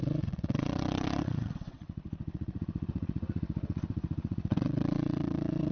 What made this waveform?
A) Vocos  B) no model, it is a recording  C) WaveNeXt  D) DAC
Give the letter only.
C